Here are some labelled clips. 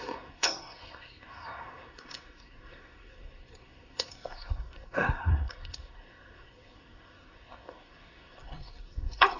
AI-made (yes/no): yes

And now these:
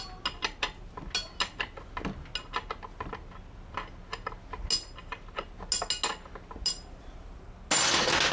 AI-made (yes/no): no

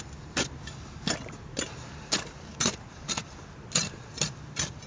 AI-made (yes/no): no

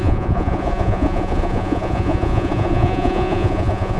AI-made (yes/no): yes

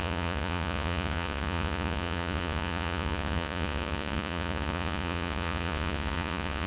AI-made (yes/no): yes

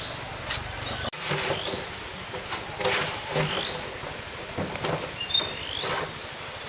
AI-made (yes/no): no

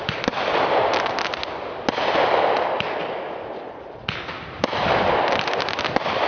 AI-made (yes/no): no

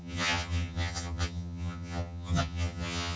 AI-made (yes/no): yes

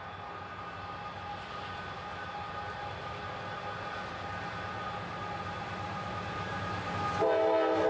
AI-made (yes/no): no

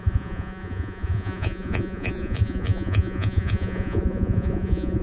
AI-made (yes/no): yes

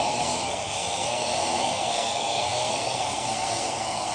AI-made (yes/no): yes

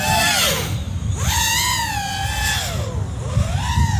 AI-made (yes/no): no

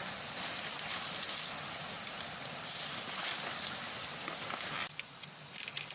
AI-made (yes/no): no